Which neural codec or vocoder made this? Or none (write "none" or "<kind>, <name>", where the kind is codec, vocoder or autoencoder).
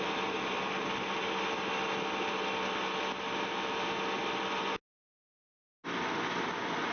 none